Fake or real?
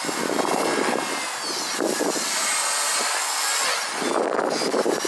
real